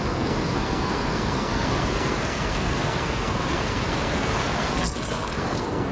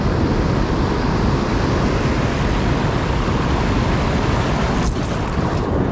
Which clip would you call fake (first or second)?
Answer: first